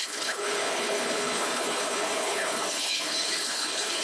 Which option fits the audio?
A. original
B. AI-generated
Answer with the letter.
B